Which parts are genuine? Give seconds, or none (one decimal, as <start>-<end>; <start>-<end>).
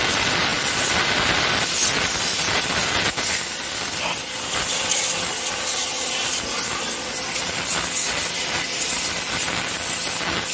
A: 0.0-10.5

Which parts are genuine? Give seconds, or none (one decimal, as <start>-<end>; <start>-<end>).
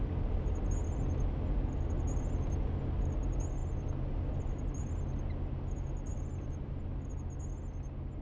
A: 0.0-6.1; 6.8-8.2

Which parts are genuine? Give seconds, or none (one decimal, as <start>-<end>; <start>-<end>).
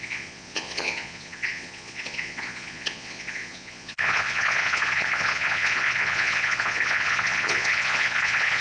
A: none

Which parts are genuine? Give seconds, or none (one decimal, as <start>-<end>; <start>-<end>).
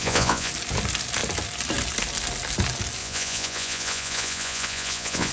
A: 0.5-3.0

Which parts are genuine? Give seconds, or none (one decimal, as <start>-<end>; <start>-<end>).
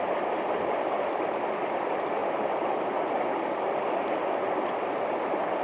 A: 0.0-2.2; 2.8-5.6